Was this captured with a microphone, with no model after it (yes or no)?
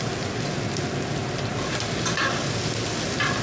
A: yes